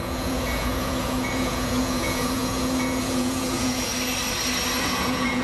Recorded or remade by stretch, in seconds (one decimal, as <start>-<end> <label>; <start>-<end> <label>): 0.0-3.9 remade; 3.9-4.8 recorded; 4.8-5.4 remade